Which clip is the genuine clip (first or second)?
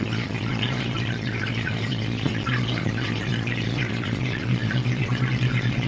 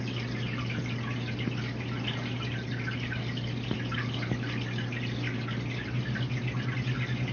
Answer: second